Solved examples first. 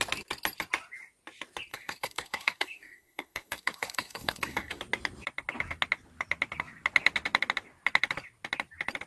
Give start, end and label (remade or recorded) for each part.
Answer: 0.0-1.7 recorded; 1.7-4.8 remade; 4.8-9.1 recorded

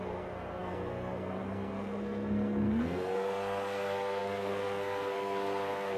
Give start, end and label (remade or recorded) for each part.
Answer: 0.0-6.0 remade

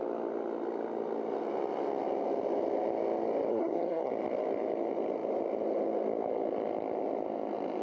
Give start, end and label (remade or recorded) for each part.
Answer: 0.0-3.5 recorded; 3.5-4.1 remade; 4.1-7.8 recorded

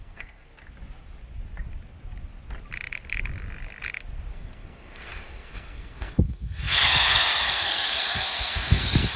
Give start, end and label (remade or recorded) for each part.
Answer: 0.0-0.5 remade; 0.5-4.3 recorded; 4.3-9.2 remade

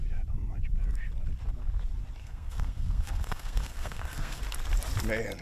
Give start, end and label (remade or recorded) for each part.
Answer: 0.0-2.2 recorded; 2.2-4.4 remade; 4.4-5.4 recorded

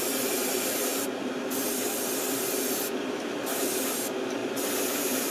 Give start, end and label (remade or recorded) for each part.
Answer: 0.0-5.3 recorded

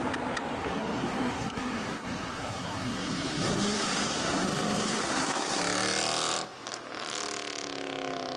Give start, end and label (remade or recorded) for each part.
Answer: 0.0-0.6 recorded; 0.6-5.6 remade; 5.6-8.4 recorded